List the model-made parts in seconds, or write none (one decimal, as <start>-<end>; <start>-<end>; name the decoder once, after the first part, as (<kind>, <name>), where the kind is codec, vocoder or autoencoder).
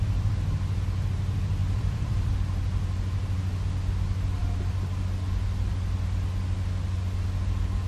1.6-2.3 (vocoder, BigVGAN v2)